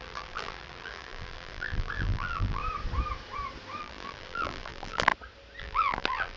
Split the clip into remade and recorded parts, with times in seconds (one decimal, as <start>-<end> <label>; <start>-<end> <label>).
0.0-2.6 remade; 2.6-3.8 recorded; 3.8-5.1 remade; 5.1-5.6 recorded; 5.6-6.4 remade